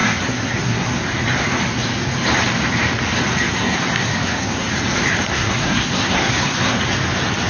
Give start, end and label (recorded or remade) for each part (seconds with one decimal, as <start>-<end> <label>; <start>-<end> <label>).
0.0-0.9 remade; 0.9-3.5 recorded; 3.5-4.7 remade; 4.7-5.3 recorded; 5.3-6.8 remade; 6.8-7.5 recorded